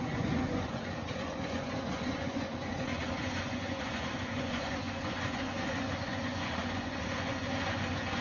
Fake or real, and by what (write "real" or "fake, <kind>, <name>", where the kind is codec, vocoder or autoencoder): fake, vocoder, Vocos